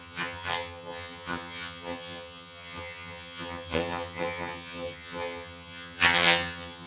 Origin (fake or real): fake